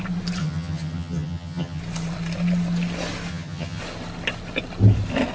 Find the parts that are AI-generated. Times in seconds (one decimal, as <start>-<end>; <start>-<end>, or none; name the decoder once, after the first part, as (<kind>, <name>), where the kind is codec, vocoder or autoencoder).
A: 0.4-1.8 (vocoder, HiFi-GAN); 3.3-3.8